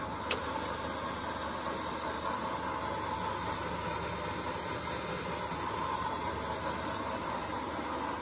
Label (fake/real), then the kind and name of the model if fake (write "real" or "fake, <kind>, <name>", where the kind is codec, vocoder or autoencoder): real